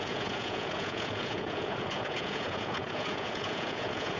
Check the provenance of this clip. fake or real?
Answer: fake